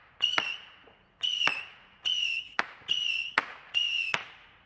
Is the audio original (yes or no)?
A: no